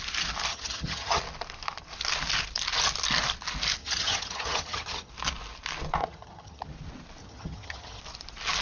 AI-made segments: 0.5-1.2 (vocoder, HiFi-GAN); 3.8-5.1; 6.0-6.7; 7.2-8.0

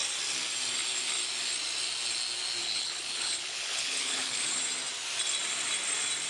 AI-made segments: 2.6-4.6 (codec, HILCodec)